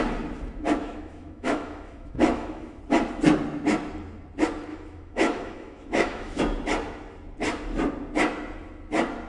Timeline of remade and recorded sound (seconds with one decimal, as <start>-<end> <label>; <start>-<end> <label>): 0.0-0.8 recorded; 0.8-2.8 remade; 2.8-4.7 recorded; 4.7-6.4 remade; 6.4-9.3 recorded